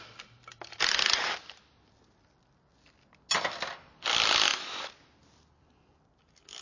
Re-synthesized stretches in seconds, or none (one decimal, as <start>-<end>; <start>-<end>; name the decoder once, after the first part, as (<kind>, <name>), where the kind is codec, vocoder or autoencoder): none